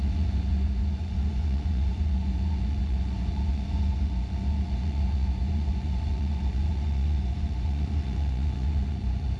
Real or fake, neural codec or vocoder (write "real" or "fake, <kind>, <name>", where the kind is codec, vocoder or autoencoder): fake, vocoder, Vocos